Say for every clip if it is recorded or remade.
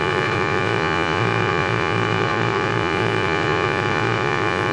remade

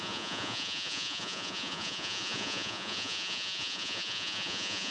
remade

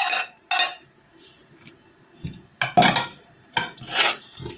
recorded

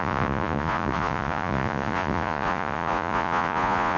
remade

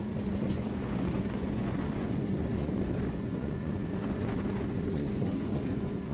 remade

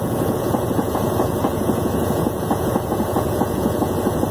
remade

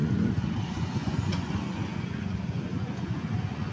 remade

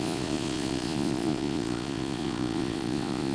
remade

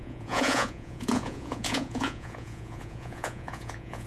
remade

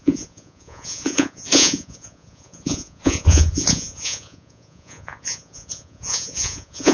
remade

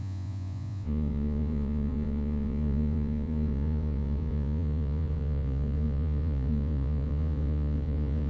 remade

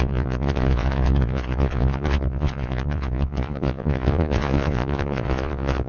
remade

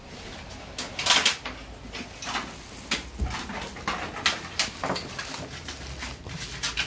recorded